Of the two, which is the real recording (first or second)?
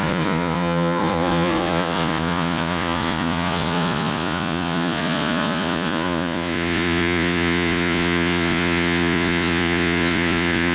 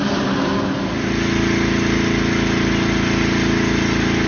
second